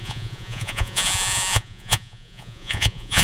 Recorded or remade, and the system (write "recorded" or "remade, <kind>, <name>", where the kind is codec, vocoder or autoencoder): remade, vocoder, Vocos